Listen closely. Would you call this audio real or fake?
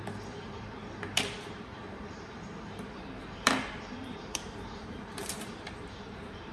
fake